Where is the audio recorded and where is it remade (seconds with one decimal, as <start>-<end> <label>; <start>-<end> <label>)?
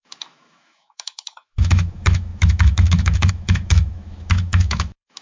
0.0-5.2 remade